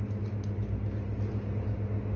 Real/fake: real